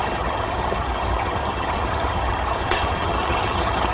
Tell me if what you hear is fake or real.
fake